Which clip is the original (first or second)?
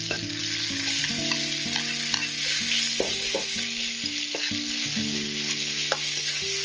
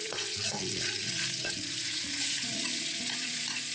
first